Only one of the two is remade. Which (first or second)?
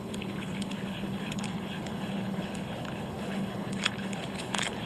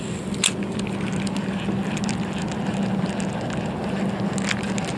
first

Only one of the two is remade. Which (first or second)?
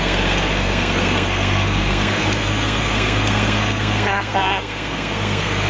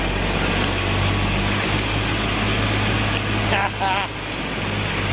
first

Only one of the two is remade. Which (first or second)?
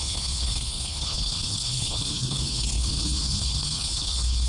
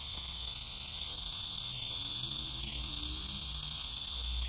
first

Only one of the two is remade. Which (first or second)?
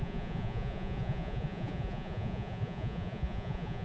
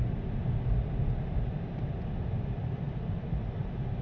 first